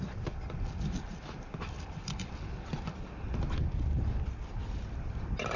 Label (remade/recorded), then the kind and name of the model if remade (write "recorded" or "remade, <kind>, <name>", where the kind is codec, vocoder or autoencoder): recorded